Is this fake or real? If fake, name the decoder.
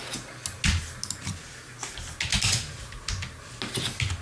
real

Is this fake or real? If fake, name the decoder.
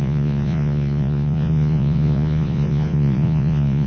fake, vocoder, Vocos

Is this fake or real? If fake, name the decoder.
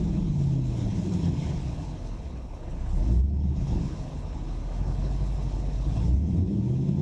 fake, codec, HILCodec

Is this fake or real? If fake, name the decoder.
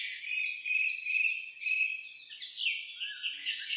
real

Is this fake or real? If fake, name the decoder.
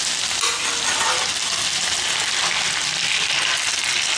real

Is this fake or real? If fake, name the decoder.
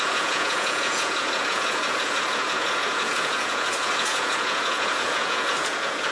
fake, vocoder, Vocos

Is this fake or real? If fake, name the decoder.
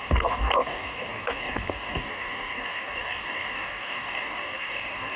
fake, codec, DAC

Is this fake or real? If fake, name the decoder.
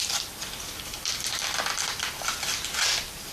fake, vocoder, BigVGAN v2